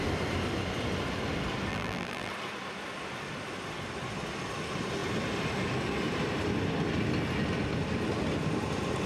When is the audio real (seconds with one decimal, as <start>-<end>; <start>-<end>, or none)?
0.0-1.7; 2.3-9.1

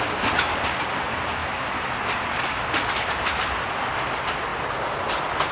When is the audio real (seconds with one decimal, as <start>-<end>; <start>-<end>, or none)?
0.0-5.5